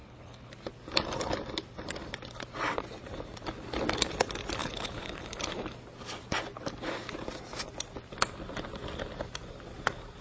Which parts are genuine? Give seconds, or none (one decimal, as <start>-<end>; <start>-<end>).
0.5-4.6; 5.4-10.2